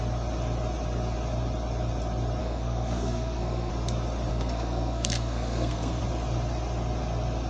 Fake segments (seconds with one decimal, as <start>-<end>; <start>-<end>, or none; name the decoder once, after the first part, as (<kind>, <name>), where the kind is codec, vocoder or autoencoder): 2.4-3.7 (codec, SNAC); 4.3-6.0